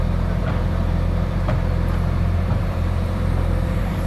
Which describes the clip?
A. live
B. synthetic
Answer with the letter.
B